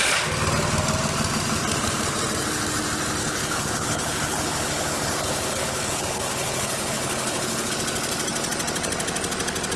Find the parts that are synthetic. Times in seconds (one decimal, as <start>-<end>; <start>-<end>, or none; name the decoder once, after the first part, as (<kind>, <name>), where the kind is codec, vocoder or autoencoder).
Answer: 3.2-7.7 (codec, HILCodec)